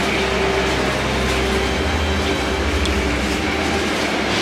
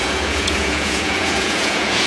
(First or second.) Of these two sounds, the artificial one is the second